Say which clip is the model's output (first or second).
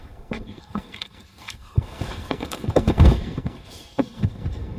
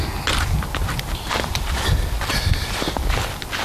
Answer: first